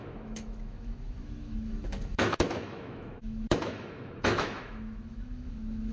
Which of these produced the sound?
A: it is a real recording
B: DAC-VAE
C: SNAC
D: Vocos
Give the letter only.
B